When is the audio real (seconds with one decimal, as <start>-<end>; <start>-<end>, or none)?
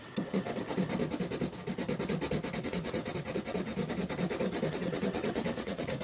0.6-2.6; 3.7-4.7